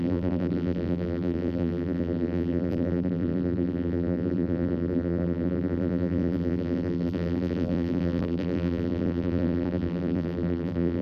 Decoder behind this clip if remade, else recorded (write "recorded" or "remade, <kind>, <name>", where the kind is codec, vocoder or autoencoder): remade, vocoder, BigVGAN v2